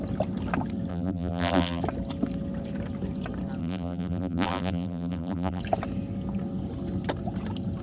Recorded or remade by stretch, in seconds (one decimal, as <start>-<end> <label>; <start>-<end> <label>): 0.0-0.9 recorded; 0.9-1.8 remade; 1.8-3.6 recorded; 3.6-5.6 remade; 5.6-7.8 recorded